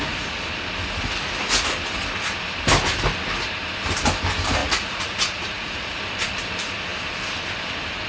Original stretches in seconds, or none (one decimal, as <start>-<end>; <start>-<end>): 0.0-4.6; 6.0-8.1